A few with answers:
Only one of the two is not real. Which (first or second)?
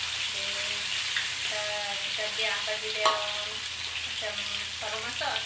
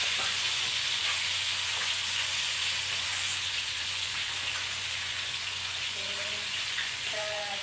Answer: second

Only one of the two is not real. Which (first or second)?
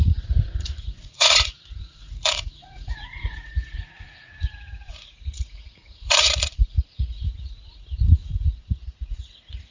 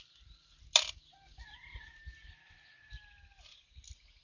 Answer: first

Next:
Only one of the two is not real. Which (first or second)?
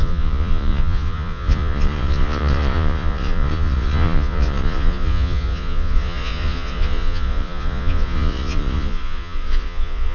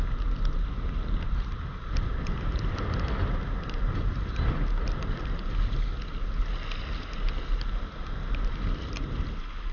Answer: first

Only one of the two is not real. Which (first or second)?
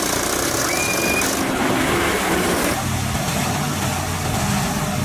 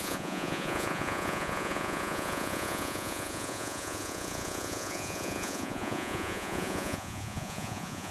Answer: second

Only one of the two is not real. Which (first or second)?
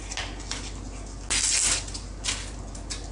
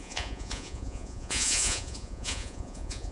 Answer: second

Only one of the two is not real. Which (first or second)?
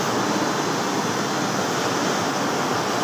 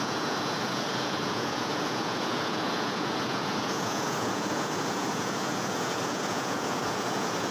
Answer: second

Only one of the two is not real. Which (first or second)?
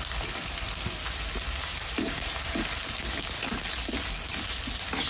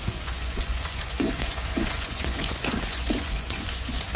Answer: second